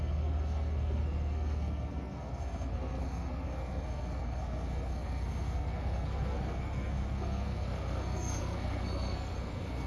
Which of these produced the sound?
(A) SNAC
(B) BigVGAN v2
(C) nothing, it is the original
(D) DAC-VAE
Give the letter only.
A